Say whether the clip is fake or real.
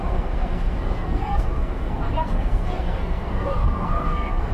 fake